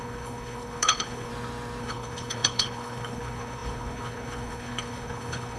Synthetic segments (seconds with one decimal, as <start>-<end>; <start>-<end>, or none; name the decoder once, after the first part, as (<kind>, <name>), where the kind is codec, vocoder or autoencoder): 0.0-1.3 (codec, HILCodec); 1.8-5.6